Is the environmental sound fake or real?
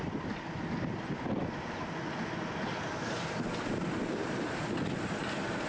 real